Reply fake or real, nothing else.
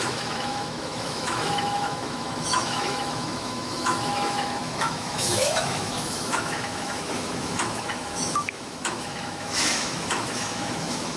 fake